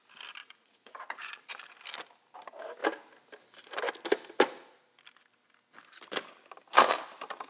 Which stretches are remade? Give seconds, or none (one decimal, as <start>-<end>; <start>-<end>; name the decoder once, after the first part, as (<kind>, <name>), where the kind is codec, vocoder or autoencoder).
0.4-1.5 (vocoder, Vocos)

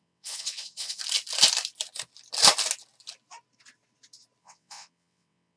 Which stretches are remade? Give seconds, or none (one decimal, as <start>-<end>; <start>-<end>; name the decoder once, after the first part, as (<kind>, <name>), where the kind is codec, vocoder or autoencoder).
0.0-1.0 (vocoder, WaveNeXt); 4.4-5.6

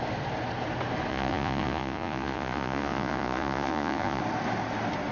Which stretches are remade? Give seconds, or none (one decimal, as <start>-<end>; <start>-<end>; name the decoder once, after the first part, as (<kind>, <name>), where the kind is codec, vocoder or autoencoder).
1.1-4.2 (vocoder, Vocos)